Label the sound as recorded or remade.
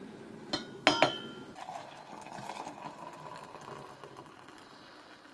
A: recorded